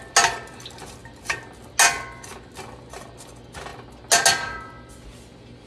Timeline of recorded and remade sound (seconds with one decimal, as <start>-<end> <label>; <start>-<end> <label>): 0.0-5.7 recorded